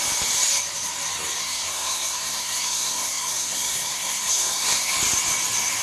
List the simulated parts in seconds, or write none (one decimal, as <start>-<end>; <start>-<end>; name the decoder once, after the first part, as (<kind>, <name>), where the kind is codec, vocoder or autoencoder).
1.4-4.9 (codec, SNAC)